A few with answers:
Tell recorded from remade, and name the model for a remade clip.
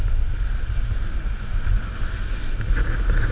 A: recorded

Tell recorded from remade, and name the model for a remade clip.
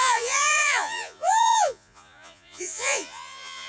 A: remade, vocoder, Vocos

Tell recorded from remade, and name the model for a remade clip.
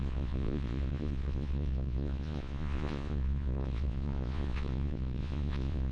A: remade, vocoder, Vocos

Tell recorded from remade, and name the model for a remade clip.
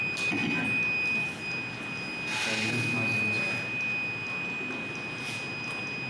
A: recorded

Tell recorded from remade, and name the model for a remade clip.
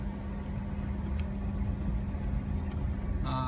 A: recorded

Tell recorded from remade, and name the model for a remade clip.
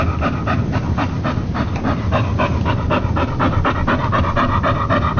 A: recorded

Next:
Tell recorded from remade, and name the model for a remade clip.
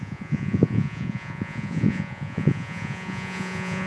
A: remade, vocoder, Vocos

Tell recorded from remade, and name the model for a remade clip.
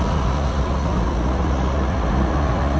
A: remade, vocoder, Vocos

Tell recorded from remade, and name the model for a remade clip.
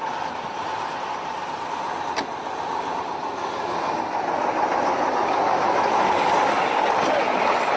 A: recorded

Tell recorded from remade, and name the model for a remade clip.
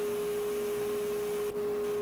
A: recorded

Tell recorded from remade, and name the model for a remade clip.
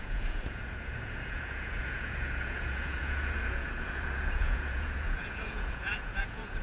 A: remade, vocoder, Vocos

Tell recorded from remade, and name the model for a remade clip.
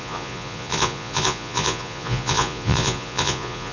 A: remade, vocoder, Vocos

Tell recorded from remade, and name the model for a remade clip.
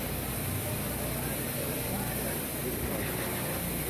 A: recorded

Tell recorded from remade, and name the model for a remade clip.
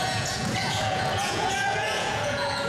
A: remade, vocoder, Vocos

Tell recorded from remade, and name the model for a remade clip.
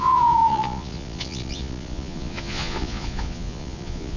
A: remade, vocoder, Vocos